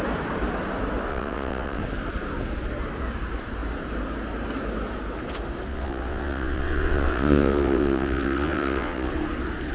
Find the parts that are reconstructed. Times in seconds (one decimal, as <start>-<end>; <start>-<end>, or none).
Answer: 1.1-1.8; 5.7-9.1